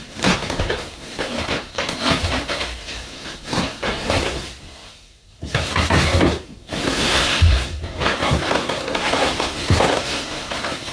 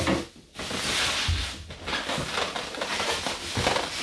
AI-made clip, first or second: first